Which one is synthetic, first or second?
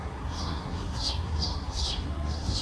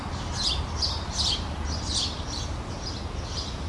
first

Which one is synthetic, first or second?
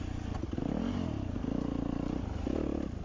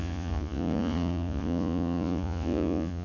second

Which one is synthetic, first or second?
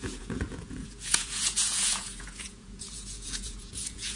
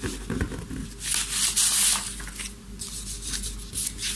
first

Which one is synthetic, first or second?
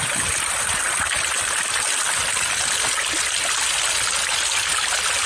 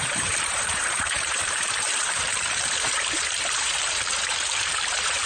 second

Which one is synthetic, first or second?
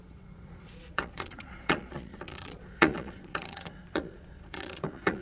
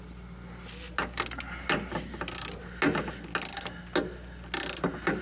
first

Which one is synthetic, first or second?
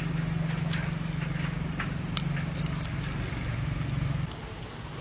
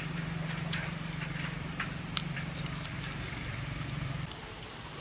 second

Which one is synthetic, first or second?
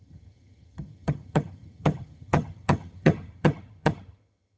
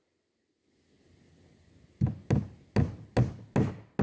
first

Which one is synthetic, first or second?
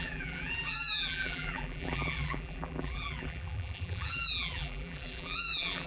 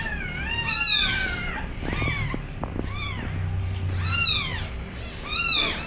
first